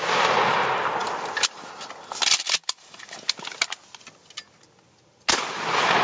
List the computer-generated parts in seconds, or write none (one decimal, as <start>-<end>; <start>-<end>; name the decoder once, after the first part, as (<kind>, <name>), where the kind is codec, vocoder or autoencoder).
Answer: none